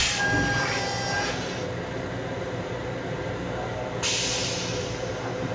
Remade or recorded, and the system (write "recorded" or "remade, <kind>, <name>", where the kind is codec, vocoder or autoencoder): recorded